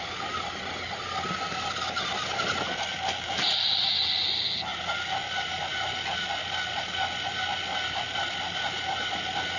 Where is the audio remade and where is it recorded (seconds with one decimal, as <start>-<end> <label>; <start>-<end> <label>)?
0.0-9.6 recorded